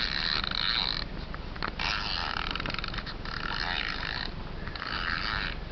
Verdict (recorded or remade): recorded